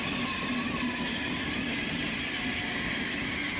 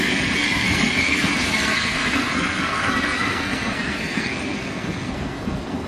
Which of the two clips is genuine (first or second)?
first